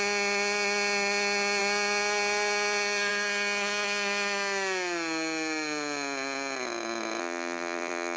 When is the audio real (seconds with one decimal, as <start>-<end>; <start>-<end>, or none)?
0.0-7.2